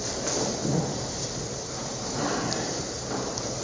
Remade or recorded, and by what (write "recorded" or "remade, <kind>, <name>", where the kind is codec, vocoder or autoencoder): recorded